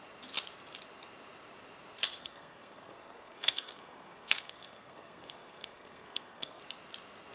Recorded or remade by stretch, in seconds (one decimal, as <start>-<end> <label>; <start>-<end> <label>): 0.0-2.2 recorded; 2.2-6.6 remade; 6.6-7.3 recorded